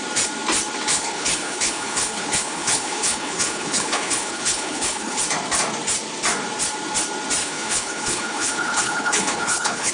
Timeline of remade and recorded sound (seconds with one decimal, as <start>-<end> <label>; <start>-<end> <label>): 0.0-0.9 recorded; 0.9-5.2 remade; 5.2-7.4 recorded; 7.4-9.9 remade